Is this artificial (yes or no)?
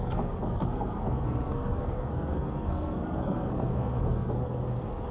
yes